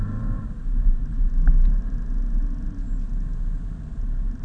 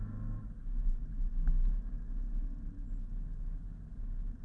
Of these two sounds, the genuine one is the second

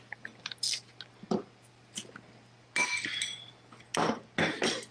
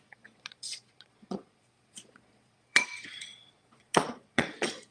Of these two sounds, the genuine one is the first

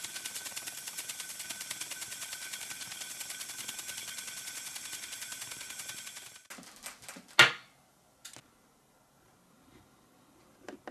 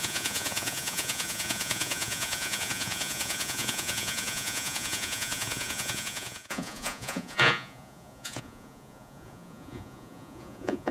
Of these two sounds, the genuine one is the first